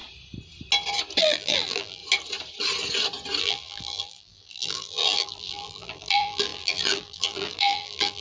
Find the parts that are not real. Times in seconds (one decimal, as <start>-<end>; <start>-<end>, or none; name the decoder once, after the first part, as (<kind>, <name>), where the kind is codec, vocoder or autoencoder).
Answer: 1.2-2.0 (vocoder, BigVGAN v2); 3.4-8.2